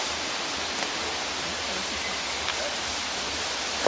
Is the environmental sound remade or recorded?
recorded